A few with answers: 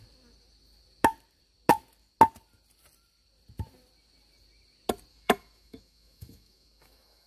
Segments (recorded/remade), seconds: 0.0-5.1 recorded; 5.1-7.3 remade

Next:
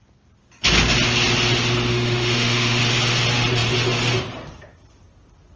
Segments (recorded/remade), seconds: 0.0-1.9 recorded; 1.9-2.8 remade; 2.8-5.6 recorded

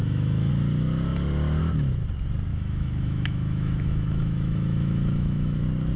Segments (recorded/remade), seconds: 0.0-0.5 remade; 0.5-2.5 recorded; 2.5-5.6 remade; 5.6-6.0 recorded